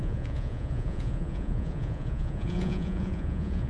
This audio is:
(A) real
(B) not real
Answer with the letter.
B